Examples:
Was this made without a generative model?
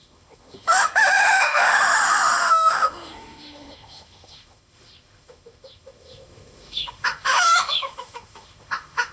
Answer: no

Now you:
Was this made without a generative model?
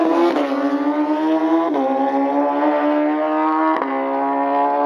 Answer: yes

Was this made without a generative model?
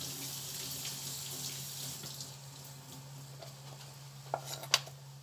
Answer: yes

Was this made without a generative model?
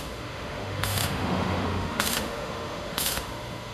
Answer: no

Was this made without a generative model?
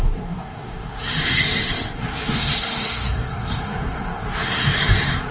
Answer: no